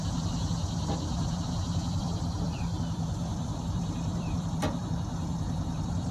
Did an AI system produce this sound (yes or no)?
yes